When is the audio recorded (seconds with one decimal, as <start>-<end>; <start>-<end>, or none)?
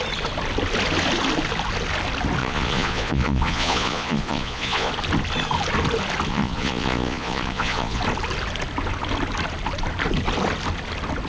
0.0-2.4; 4.9-6.3; 8.0-11.3